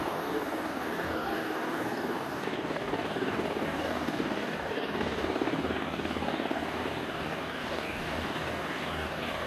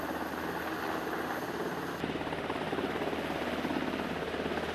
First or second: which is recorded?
second